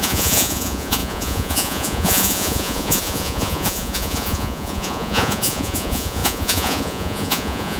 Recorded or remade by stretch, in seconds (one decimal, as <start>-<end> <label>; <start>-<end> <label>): 0.0-7.8 remade